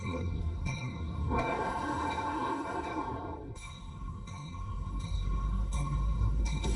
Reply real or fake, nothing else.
fake